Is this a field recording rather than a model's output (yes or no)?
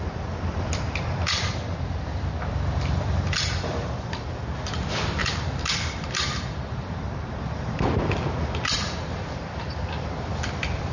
no